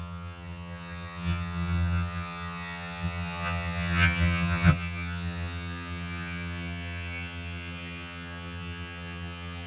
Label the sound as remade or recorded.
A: remade